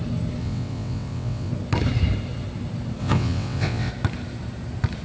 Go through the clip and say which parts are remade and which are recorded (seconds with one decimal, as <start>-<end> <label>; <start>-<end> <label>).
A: 0.0-0.4 recorded; 0.4-1.5 remade; 1.5-3.0 recorded; 3.0-3.9 remade; 3.9-5.0 recorded